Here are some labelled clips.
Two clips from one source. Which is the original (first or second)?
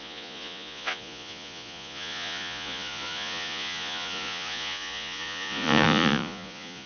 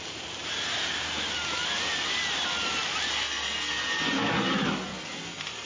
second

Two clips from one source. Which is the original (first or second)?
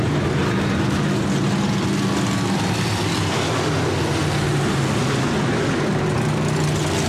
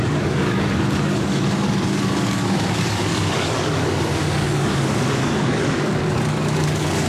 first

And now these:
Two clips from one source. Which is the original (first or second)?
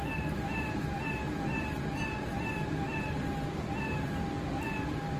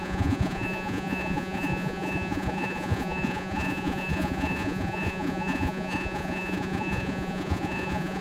first